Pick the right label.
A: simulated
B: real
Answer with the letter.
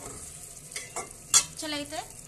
B